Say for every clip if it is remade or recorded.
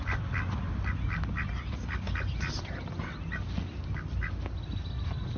recorded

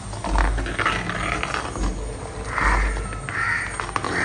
recorded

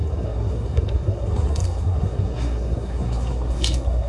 remade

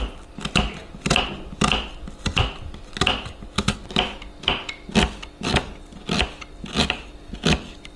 recorded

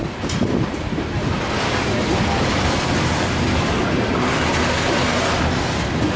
recorded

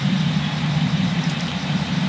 recorded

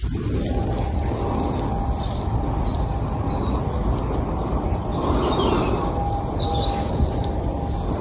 recorded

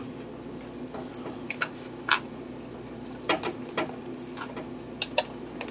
recorded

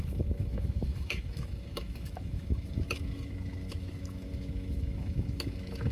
remade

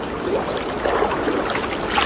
recorded